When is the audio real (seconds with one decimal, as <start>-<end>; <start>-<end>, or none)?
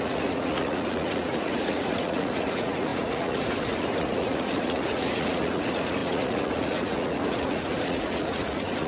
none